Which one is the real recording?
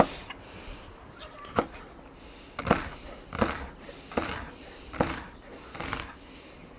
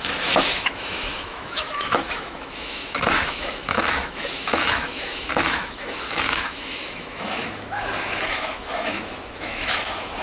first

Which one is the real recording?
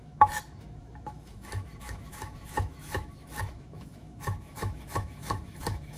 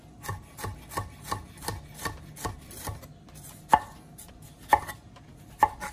second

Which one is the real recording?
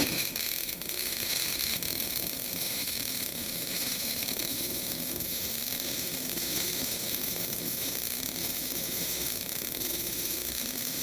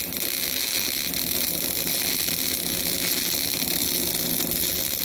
second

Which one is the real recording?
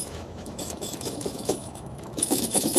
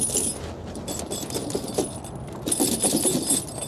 second